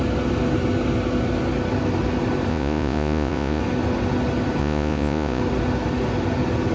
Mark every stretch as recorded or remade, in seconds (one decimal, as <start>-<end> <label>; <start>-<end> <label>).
0.0-2.5 recorded; 2.5-3.6 remade; 3.6-4.6 recorded; 4.6-5.4 remade; 5.4-6.7 recorded